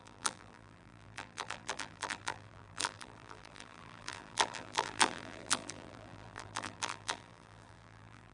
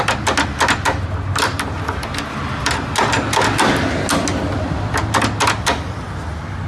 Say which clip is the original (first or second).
second